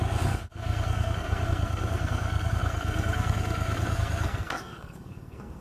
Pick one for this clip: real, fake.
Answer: fake